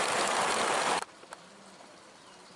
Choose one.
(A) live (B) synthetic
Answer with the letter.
A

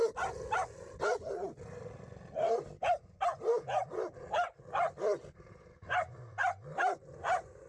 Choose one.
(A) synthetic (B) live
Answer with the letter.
B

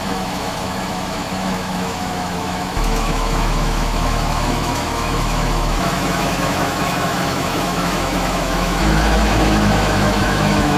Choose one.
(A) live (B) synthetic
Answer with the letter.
B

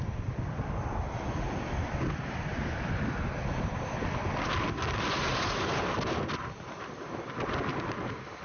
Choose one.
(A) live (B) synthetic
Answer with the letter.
A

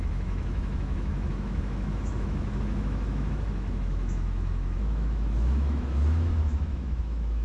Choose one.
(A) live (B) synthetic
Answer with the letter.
B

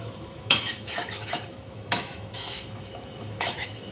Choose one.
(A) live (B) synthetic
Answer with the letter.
B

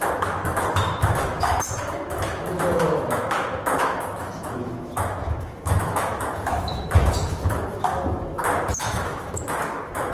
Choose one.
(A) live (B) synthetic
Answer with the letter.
B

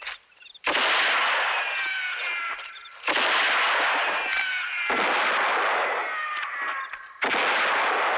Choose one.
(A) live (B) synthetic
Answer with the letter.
A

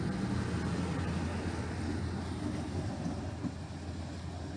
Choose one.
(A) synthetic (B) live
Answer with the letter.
B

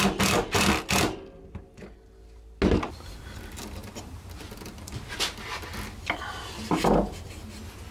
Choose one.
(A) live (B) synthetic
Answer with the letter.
A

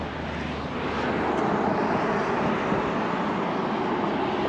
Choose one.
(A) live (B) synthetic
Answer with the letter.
A